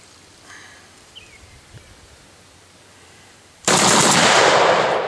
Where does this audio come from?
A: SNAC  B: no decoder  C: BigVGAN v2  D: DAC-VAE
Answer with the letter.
C